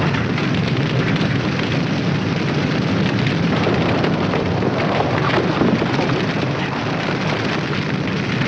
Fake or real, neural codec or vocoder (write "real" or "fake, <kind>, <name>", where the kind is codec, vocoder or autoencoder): fake, vocoder, BigVGAN v2